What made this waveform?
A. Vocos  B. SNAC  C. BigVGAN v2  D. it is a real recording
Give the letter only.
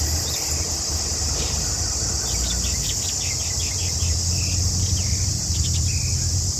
D